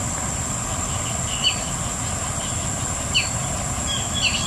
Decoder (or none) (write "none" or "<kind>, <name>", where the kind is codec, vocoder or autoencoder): none